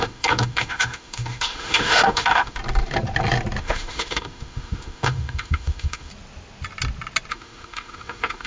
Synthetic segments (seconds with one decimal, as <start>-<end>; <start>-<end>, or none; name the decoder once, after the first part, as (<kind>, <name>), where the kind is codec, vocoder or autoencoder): 0.0-2.6 (autoencoder, DAC-VAE); 3.6-6.1; 7.3-8.5